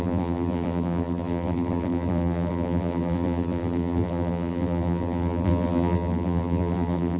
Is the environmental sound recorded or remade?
remade